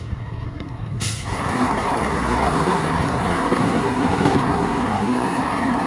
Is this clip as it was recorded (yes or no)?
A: no